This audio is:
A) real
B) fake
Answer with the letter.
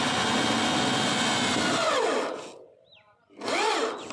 A